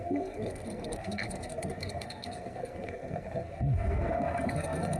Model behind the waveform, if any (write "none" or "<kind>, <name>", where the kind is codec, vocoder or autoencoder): codec, SNAC